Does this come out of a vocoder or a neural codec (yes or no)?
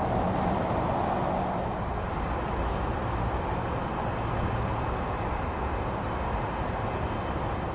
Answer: no